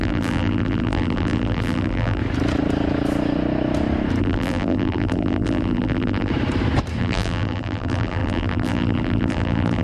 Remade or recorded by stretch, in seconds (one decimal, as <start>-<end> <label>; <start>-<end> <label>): 0.0-2.2 remade; 2.2-4.2 recorded; 4.2-6.3 remade; 6.3-7.0 recorded; 7.0-9.8 remade